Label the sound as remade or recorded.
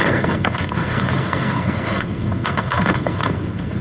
remade